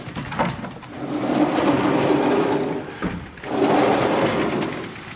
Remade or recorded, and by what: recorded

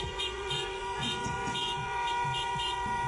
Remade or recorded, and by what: remade, vocoder, Vocos